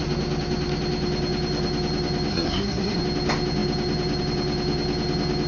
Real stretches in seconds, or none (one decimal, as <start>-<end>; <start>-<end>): 0.0-2.3; 3.0-5.5